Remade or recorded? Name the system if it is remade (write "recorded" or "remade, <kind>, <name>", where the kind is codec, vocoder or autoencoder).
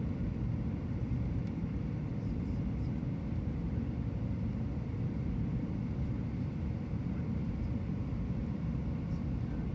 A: remade, vocoder, BigVGAN v2